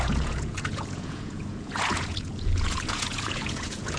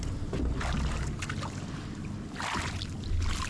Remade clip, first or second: first